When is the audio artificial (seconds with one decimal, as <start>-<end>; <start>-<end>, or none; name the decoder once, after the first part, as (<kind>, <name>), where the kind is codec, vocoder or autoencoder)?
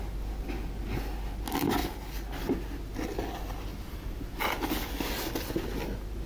3.7-4.9 (vocoder, BigVGAN v2)